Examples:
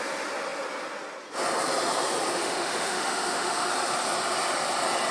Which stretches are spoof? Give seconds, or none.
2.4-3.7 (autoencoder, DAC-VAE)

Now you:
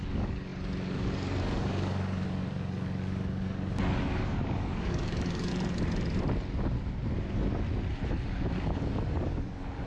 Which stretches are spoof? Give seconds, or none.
0.0-5.5 (codec, DAC); 8.1-9.9